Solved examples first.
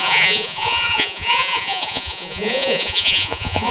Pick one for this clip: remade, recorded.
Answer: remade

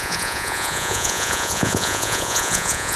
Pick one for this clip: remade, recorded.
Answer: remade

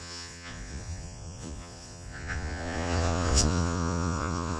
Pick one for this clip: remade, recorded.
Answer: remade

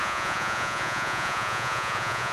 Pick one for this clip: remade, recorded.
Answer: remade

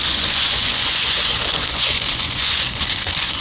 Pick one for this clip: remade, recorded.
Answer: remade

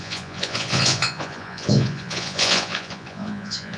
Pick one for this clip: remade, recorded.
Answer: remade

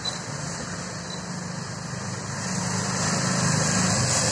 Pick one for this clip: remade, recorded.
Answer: recorded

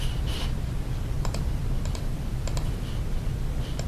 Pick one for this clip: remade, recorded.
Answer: recorded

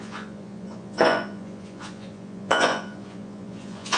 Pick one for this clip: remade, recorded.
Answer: remade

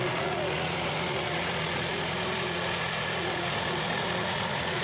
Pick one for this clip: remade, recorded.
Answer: remade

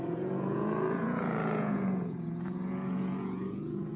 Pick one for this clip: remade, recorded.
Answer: remade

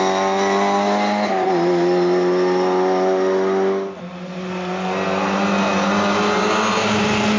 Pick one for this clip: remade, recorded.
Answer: recorded